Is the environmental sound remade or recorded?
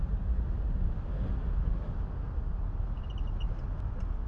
recorded